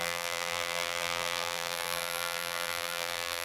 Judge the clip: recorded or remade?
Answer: remade